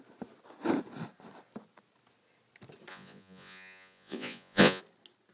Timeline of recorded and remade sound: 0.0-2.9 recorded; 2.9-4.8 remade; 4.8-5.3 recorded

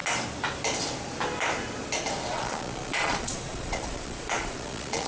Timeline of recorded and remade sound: 0.0-2.3 recorded; 2.3-5.1 remade

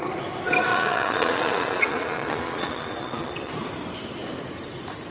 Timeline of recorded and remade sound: 0.0-0.7 recorded; 0.7-3.5 remade; 3.5-5.1 recorded

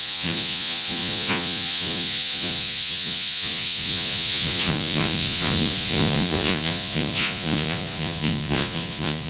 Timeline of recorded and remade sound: 0.0-9.3 remade